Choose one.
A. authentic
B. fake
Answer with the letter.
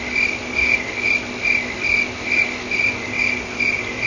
A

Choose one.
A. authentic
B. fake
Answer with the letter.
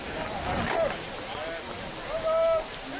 A